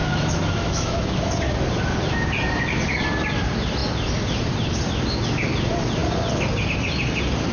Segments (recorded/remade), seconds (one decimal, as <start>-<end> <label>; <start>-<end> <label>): 0.0-1.3 remade; 1.3-7.5 recorded